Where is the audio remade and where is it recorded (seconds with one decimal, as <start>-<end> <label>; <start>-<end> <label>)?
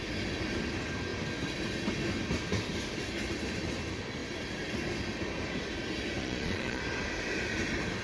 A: 0.0-6.2 recorded; 6.2-6.8 remade; 6.8-8.0 recorded